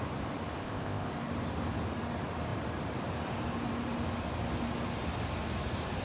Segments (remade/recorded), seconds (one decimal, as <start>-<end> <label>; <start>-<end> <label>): 0.0-0.6 recorded; 0.6-1.1 remade; 1.1-6.0 recorded